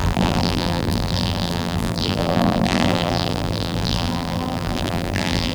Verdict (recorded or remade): remade